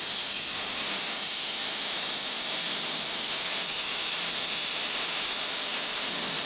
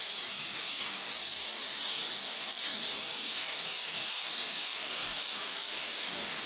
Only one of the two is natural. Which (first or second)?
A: first